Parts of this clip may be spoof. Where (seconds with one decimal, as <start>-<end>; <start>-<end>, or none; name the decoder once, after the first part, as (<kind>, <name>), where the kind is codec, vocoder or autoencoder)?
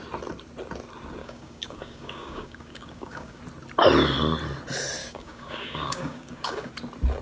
1.2-3.4 (codec, DAC); 5.0-6.7